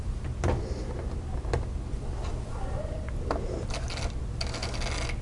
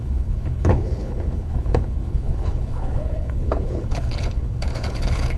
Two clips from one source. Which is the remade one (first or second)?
second